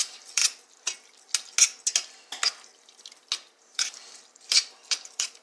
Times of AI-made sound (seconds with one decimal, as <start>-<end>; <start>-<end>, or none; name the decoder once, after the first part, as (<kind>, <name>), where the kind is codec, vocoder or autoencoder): 0.0-0.4 (vocoder, BigVGAN v2); 3.6-5.4